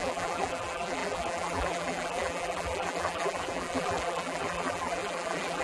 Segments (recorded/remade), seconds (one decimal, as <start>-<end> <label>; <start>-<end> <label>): 0.0-5.6 remade